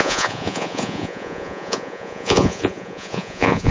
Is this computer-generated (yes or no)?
yes